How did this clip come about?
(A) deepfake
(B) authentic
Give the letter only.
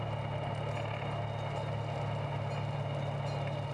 B